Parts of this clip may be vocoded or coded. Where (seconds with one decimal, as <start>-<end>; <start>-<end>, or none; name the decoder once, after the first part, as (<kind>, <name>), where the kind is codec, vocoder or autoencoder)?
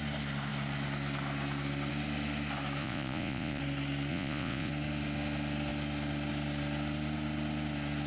2.8-3.6 (vocoder, Vocos); 4.1-4.7